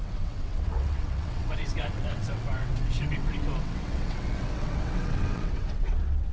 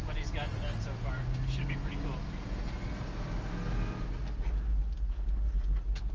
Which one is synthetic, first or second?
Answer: first